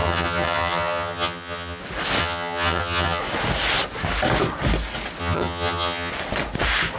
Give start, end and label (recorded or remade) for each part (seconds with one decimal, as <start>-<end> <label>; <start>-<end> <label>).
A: 0.0-1.8 remade; 1.8-2.2 recorded; 2.2-3.2 remade; 3.2-5.2 recorded; 5.2-6.1 remade; 6.1-7.0 recorded